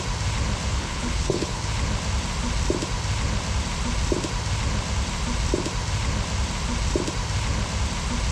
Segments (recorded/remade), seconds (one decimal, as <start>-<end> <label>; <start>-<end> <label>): 0.0-0.7 recorded; 0.7-1.7 remade; 1.7-8.3 recorded